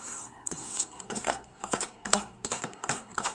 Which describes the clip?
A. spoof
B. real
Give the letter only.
A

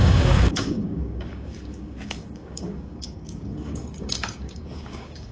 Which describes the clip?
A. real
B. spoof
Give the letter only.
B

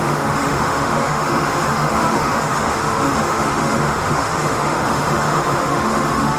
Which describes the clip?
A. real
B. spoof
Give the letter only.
B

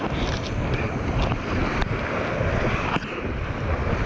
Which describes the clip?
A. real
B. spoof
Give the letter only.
A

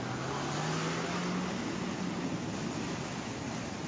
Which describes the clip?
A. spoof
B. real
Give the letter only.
B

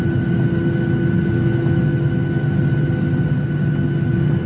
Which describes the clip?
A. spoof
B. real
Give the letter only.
B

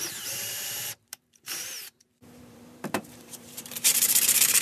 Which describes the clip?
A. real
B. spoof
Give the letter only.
B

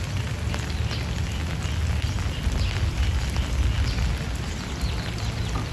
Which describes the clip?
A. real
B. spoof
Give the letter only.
A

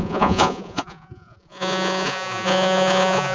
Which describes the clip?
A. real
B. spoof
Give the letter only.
B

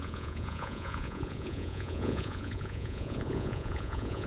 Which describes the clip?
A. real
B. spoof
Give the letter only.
B